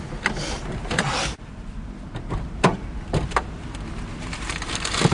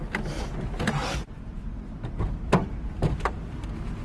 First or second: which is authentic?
second